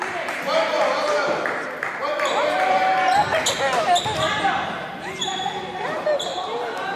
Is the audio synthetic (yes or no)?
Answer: no